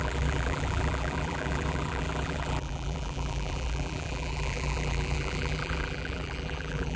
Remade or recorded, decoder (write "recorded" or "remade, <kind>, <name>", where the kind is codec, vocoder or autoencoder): remade, vocoder, BigVGAN v2